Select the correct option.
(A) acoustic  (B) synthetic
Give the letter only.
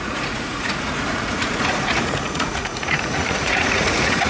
B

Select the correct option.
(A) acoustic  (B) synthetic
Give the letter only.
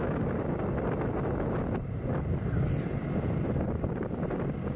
A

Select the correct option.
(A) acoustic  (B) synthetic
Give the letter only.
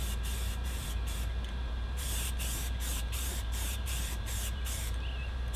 B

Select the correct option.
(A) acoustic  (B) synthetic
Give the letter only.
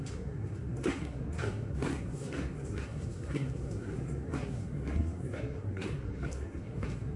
B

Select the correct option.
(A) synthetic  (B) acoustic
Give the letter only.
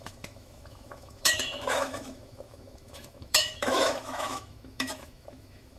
A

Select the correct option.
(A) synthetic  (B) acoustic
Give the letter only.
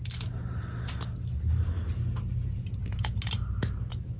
B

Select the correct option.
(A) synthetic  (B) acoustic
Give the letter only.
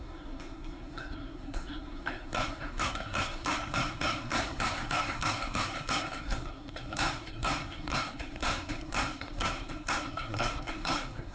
A